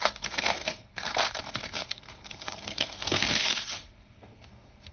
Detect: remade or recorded remade